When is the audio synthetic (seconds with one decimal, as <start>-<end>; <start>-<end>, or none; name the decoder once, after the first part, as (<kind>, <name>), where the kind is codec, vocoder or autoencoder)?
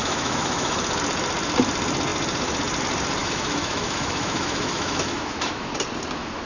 0.0-0.8 (autoencoder, DAC-VAE); 3.2-5.7